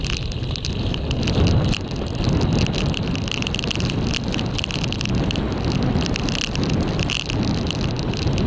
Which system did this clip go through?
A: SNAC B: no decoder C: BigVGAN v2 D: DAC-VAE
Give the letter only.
B